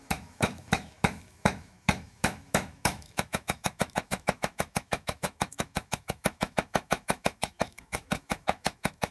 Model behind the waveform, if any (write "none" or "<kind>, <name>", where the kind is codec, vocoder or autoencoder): autoencoder, DAC-VAE